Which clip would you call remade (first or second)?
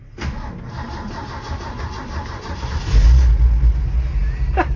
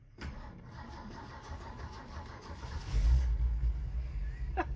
second